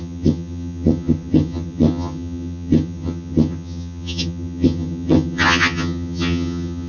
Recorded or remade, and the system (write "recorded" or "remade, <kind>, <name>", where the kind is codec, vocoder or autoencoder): remade, vocoder, HiFi-GAN